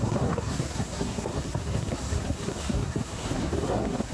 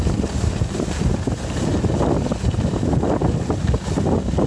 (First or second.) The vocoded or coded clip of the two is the first